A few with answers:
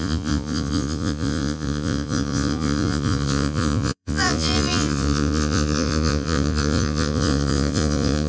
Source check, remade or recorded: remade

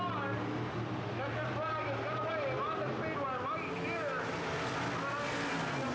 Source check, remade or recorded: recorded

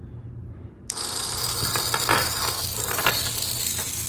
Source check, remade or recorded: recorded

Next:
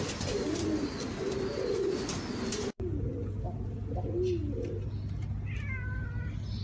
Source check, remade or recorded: recorded